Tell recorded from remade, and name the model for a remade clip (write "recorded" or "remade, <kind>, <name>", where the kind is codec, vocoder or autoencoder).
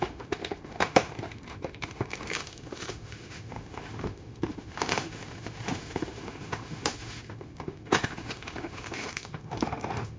remade, autoencoder, DAC-VAE